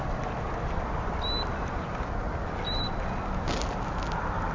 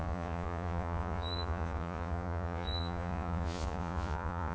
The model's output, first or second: second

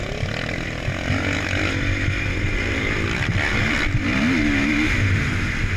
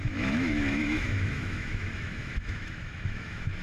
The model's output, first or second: second